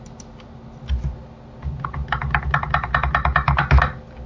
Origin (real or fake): real